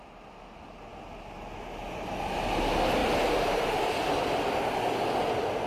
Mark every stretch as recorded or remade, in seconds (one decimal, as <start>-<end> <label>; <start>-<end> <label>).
0.0-3.0 recorded; 3.0-4.7 remade; 4.7-5.7 recorded